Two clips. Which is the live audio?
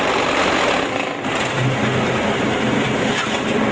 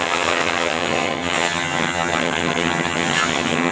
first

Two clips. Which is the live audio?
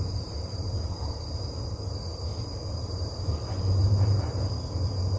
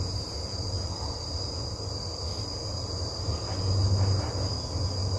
second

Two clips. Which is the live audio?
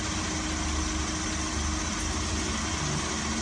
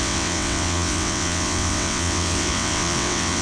first